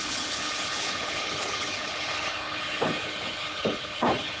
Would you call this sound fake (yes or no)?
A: yes